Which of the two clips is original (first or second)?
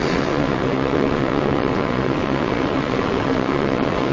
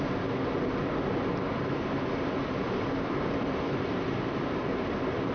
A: second